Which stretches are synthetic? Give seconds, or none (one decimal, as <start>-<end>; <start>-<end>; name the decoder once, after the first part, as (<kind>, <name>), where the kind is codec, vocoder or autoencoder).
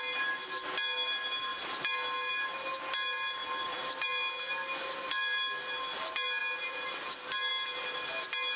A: none